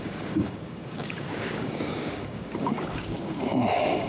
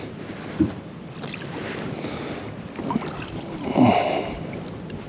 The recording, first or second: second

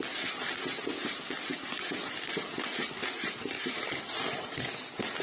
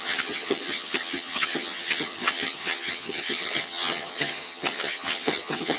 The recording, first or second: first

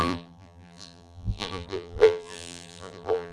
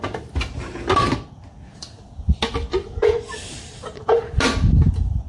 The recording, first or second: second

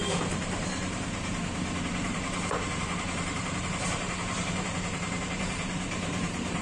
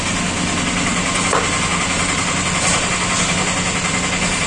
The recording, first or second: second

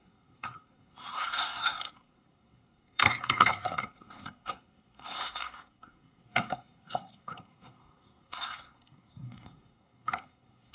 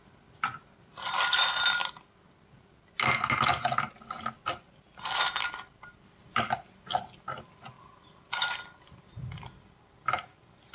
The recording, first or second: second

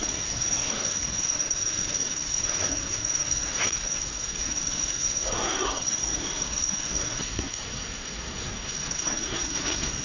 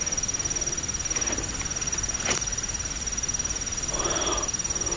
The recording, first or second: second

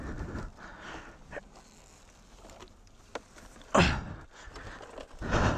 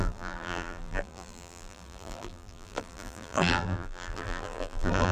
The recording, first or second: first